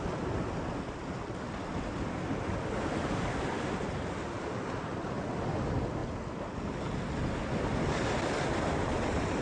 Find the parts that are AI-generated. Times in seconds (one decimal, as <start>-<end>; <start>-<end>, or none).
none